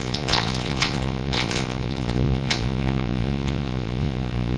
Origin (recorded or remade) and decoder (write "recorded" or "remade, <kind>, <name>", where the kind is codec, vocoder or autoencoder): remade, vocoder, Vocos